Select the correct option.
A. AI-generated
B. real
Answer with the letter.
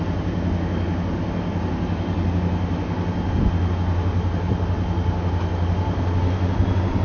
B